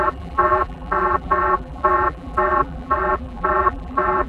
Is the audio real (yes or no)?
no